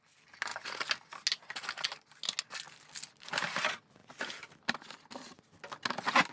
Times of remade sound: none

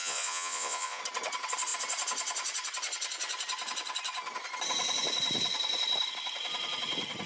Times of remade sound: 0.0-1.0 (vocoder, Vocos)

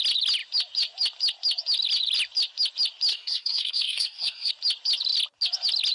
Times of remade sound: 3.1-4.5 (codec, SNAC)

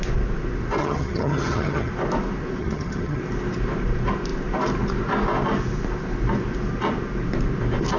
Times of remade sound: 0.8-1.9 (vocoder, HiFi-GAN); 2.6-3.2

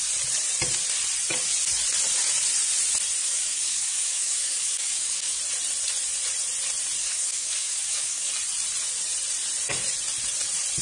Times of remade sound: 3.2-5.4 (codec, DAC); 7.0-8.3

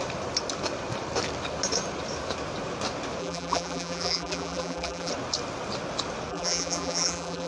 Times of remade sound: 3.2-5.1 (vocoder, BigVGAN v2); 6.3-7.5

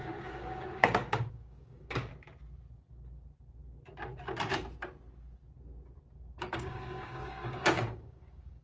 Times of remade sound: 0.0-2.1 (codec, DAC); 6.4-8.6

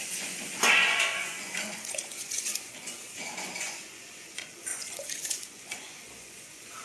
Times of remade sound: 0.0-6.8 (vocoder, Vocos)